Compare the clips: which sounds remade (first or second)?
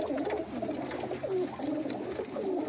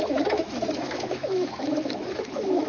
second